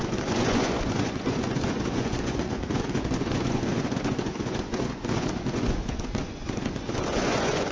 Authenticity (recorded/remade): remade